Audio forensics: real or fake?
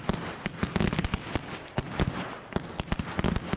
real